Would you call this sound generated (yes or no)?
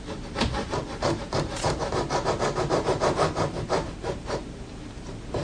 yes